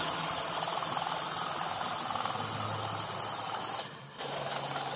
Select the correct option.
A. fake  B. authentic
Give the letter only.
B